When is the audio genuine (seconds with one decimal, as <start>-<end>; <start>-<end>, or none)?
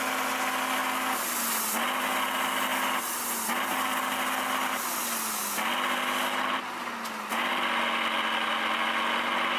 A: 0.0-9.6